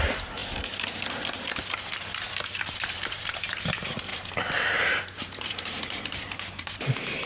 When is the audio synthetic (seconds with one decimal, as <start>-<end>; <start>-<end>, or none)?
0.0-0.4; 2.6-7.3